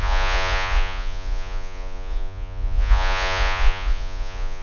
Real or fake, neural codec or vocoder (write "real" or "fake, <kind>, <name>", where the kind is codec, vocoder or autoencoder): fake, vocoder, Vocos